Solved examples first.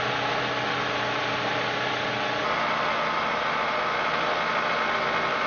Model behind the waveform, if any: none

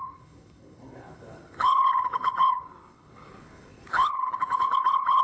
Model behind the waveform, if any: codec, HILCodec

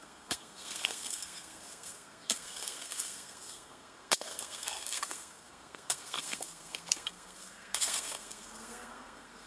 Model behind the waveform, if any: codec, SNAC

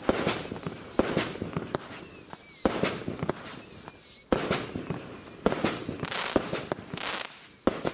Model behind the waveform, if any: none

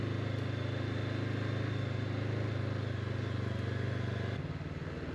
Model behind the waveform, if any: none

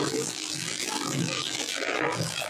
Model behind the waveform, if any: vocoder, BigVGAN v2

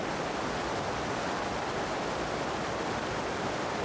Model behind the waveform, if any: none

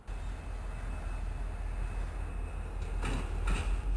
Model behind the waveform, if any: none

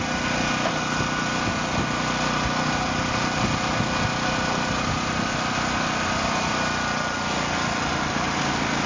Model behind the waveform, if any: none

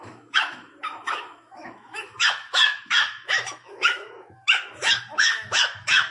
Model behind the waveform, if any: autoencoder, DAC-VAE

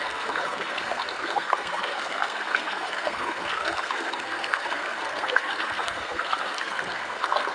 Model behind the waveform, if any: codec, SNAC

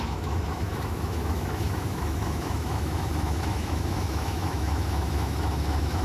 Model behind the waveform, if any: autoencoder, DAC-VAE